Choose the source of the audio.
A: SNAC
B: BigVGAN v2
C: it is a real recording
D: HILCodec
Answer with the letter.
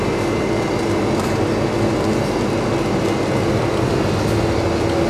C